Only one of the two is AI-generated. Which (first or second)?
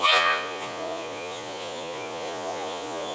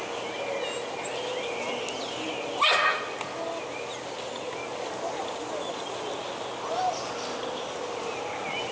first